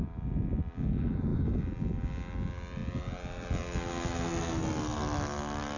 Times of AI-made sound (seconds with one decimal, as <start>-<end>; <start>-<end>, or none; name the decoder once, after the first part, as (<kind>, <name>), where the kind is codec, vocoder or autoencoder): none